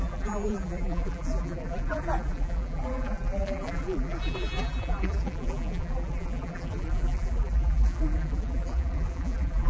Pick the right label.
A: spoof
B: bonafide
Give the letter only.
A